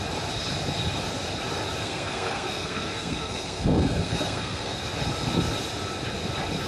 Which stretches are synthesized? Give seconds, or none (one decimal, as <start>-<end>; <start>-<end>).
1.8-4.8